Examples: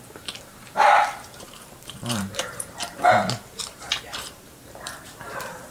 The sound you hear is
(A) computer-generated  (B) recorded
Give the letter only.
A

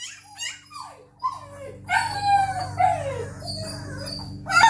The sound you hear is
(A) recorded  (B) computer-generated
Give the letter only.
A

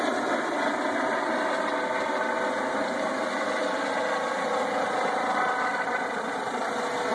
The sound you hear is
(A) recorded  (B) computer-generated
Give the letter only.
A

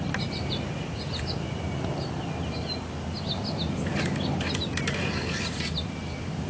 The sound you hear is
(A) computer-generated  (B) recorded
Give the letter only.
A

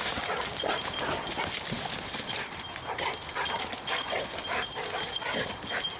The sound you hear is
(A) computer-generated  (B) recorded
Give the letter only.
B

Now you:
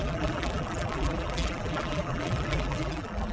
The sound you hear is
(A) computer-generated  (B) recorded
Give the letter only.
A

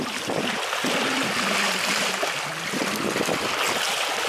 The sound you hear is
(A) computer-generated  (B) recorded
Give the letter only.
B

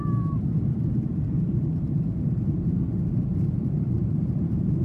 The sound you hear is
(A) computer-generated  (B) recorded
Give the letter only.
A